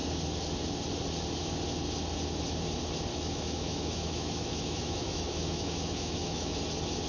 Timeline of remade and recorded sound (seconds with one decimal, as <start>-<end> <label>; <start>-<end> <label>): 0.0-3.1 recorded; 3.1-6.6 remade; 6.6-7.1 recorded